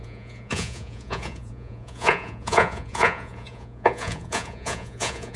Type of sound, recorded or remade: remade